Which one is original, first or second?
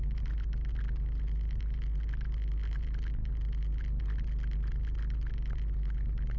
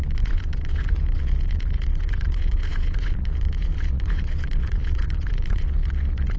first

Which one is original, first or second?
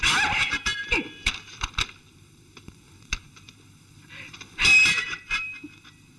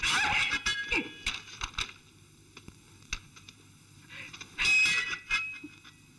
second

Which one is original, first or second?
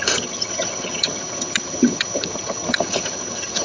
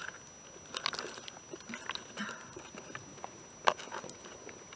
second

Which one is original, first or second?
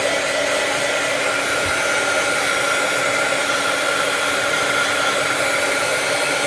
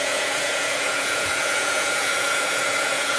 first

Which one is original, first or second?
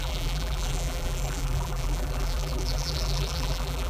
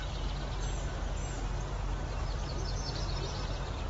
second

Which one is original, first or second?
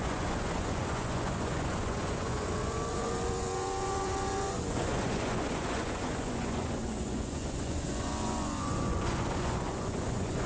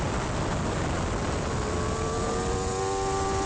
second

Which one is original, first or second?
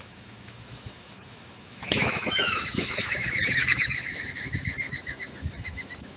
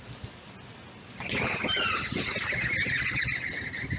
second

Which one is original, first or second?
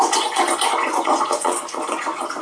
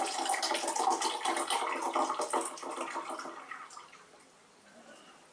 second